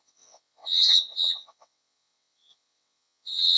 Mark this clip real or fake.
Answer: fake